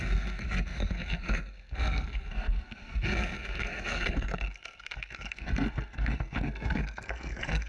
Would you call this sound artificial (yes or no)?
yes